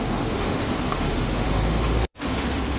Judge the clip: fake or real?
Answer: fake